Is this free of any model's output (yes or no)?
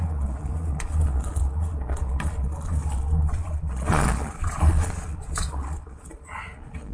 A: no